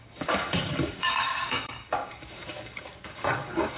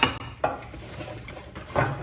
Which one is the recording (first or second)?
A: second